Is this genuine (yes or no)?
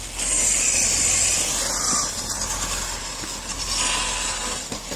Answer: yes